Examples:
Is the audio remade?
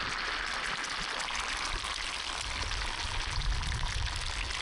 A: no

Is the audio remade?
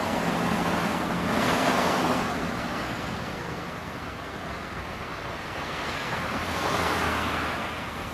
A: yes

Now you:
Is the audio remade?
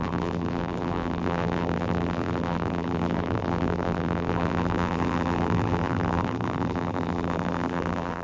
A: yes